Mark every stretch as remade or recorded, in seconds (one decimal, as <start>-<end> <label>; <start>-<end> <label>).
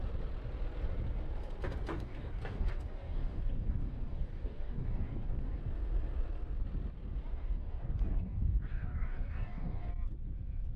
0.0-1.9 recorded; 1.9-5.6 remade; 5.6-7.3 recorded; 7.3-9.9 remade; 9.9-10.8 recorded